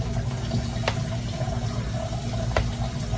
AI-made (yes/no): no